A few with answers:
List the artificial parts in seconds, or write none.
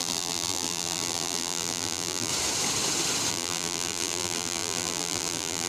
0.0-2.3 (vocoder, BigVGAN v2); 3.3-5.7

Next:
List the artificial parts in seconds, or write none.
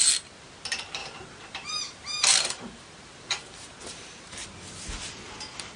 1.0-4.5 (vocoder, BigVGAN v2)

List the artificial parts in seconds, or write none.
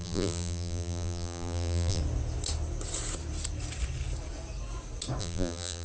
0.0-2.0 (vocoder, BigVGAN v2); 5.2-5.8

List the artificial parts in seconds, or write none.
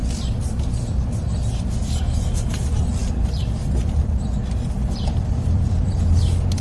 3.0-6.0 (vocoder, BigVGAN v2)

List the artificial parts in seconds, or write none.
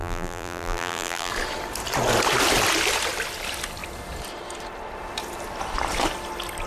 0.0-1.3 (vocoder, BigVGAN v2)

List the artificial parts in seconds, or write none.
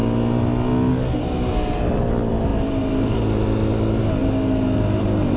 2.5-3.2 (vocoder, BigVGAN v2)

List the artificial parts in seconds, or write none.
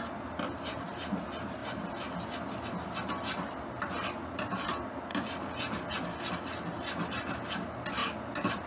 0.0-1.6 (vocoder, BigVGAN v2); 2.7-5.1; 6.3-8.7